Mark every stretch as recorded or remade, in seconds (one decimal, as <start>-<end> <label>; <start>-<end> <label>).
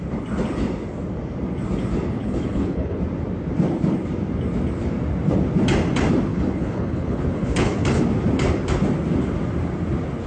0.0-2.2 recorded; 2.2-3.0 remade; 3.0-6.3 recorded; 6.3-8.0 remade; 8.0-10.3 recorded